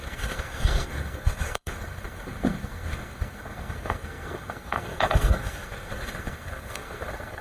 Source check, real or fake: fake